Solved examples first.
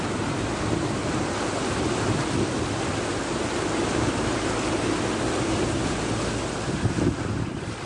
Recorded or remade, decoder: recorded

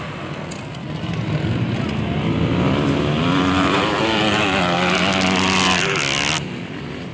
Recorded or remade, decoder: recorded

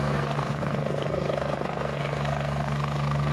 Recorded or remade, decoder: remade, codec, SNAC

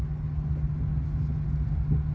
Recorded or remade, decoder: recorded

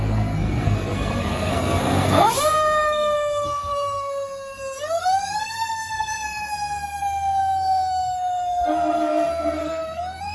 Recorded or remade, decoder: remade, codec, SNAC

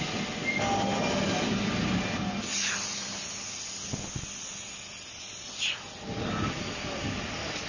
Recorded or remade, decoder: recorded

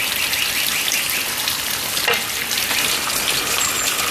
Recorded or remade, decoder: recorded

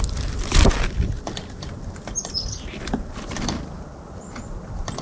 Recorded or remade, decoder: recorded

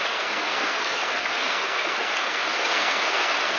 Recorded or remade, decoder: remade, codec, SNAC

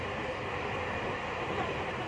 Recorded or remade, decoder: recorded